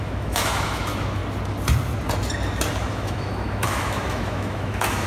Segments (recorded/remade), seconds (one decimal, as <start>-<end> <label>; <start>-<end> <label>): 0.0-1.2 remade; 1.2-2.9 recorded; 2.9-5.1 remade